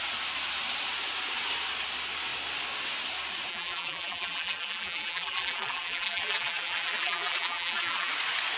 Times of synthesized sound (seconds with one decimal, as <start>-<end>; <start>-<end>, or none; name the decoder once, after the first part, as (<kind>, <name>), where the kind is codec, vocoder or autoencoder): 3.5-8.1 (vocoder, BigVGAN v2)

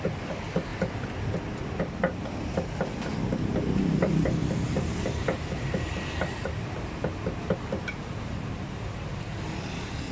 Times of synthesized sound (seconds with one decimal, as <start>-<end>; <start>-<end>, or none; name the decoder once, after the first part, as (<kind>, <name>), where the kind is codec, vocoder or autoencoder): 0.0-4.4 (vocoder, BigVGAN v2); 5.2-10.1